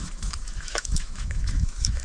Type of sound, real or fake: fake